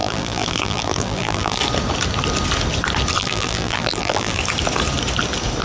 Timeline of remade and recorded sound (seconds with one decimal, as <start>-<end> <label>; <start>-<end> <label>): 0.0-1.6 remade; 1.6-3.2 recorded; 3.2-4.4 remade; 4.4-5.6 recorded